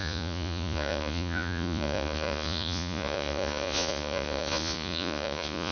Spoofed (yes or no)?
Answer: yes